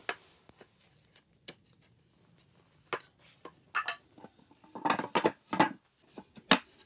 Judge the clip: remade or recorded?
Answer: recorded